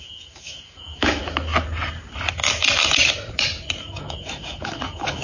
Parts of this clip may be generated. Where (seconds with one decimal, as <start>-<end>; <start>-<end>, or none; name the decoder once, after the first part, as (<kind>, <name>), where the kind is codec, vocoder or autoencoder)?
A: 0.0-1.2 (autoencoder, DAC-VAE); 3.8-5.2